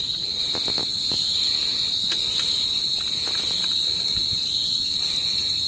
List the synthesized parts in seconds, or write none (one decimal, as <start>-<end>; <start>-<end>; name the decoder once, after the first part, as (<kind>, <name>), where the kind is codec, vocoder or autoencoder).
none